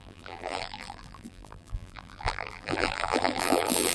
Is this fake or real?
fake